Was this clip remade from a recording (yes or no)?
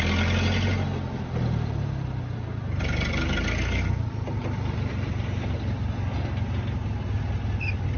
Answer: no